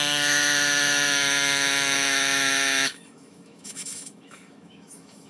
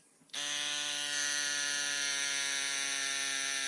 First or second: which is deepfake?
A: first